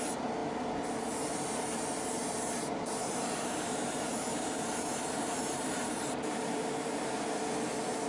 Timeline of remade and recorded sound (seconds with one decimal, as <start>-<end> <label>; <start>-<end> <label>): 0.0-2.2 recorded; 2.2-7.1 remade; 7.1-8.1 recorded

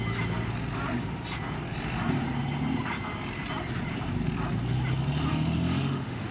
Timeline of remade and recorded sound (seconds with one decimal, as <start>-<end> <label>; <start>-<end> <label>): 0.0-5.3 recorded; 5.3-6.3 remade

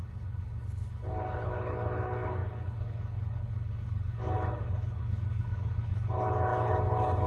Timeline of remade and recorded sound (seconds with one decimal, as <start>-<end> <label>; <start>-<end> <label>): 0.0-7.3 remade

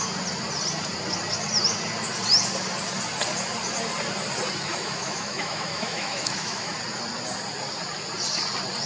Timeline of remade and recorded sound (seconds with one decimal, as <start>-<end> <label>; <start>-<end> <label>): 0.0-4.7 recorded; 4.7-6.7 remade; 6.7-8.9 recorded